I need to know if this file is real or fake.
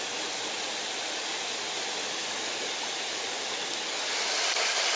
real